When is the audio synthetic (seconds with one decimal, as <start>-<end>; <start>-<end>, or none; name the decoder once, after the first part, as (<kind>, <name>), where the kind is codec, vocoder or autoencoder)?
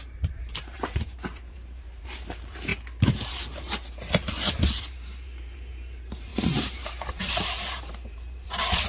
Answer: 0.0-2.7 (vocoder, BigVGAN v2); 3.3-8.9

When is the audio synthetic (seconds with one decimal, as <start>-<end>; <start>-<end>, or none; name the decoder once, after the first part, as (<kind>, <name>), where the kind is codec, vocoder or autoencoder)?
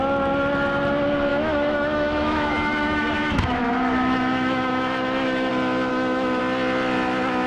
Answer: 1.3-5.5 (autoencoder, DAC-VAE); 5.9-6.4